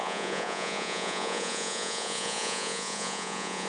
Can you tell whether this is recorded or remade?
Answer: remade